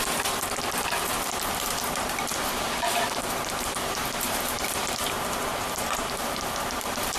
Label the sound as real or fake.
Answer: fake